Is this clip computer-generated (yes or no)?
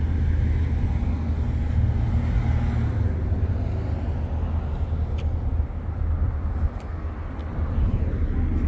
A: no